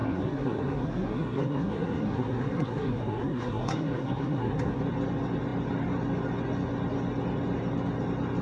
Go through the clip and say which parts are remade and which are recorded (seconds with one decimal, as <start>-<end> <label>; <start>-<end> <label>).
0.0-4.8 remade; 4.8-8.4 recorded